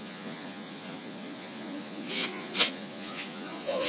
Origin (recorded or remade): remade